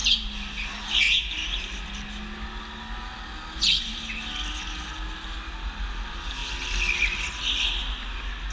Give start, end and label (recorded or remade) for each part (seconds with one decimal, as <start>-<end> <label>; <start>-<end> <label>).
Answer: 0.0-8.5 recorded